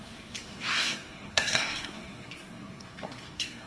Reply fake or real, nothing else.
fake